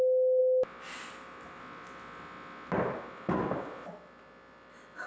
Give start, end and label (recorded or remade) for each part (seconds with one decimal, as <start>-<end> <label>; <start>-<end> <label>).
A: 0.0-5.1 recorded